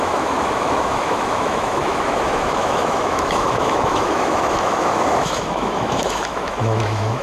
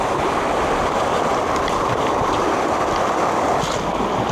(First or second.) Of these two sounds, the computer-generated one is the first